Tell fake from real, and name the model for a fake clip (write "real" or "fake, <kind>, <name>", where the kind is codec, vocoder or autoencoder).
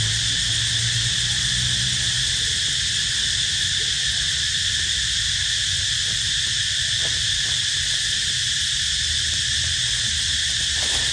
real